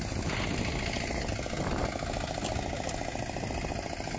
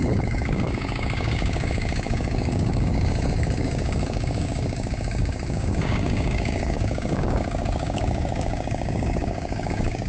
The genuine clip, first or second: first